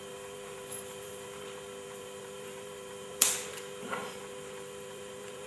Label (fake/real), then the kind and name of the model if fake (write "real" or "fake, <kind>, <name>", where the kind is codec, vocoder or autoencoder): fake, vocoder, BigVGAN v2